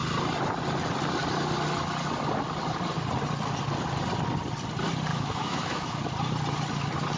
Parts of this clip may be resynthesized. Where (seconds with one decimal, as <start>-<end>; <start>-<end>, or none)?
5.1-6.0